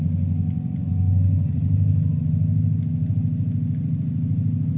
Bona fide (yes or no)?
yes